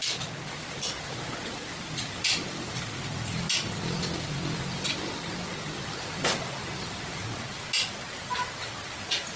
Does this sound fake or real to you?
real